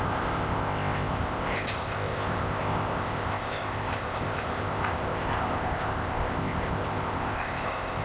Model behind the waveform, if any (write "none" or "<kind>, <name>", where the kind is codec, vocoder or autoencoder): codec, ZipCodec